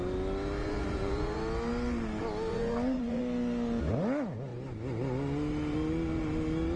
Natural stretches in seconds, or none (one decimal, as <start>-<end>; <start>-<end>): 0.0-0.6; 1.4-2.5; 3.2-6.8